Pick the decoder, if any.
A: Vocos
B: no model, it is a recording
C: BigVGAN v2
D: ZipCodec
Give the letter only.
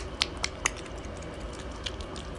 B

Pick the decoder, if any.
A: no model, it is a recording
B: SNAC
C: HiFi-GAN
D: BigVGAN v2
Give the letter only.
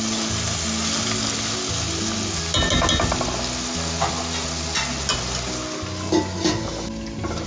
A